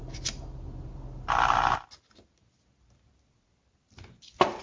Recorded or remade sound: recorded